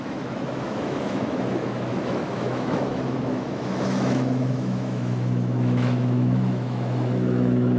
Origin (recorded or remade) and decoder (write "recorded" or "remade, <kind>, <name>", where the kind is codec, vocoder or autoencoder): remade, autoencoder, DAC-VAE